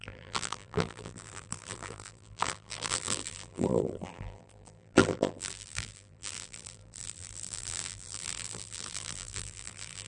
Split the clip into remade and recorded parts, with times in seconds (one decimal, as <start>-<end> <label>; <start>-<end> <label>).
0.0-10.1 remade